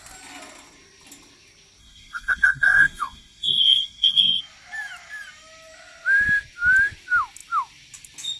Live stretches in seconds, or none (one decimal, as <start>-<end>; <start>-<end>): 0.0-1.8; 4.4-8.4